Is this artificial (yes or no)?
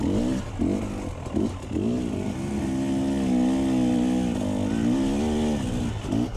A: no